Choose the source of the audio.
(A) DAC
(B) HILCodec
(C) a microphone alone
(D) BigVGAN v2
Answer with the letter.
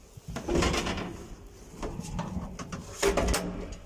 C